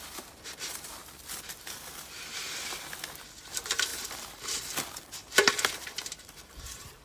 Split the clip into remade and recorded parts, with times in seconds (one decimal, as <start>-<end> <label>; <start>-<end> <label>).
0.0-1.0 remade; 1.0-1.6 recorded; 1.6-2.4 remade; 2.4-3.4 recorded; 3.4-7.0 remade